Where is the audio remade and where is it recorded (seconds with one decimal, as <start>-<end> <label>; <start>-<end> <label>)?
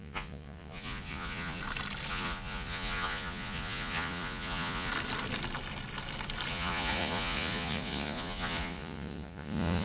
0.0-1.6 remade; 1.6-2.1 recorded; 2.1-4.9 remade; 4.9-6.5 recorded; 6.5-9.8 remade